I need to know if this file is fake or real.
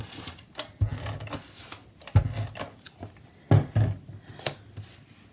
real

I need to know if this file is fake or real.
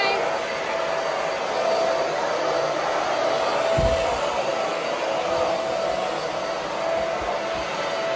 real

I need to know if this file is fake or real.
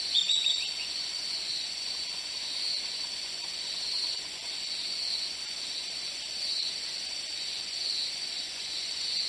fake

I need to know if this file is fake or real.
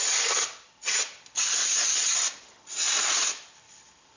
real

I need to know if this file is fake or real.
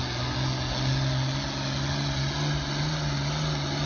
real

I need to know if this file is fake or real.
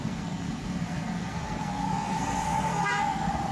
fake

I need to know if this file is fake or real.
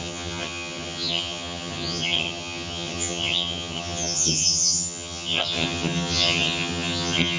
fake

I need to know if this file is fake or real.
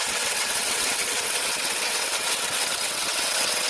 fake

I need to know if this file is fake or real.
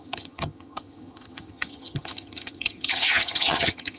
fake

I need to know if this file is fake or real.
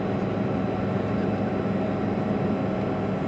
real